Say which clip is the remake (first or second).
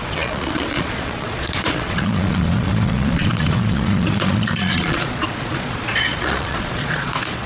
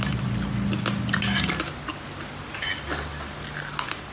first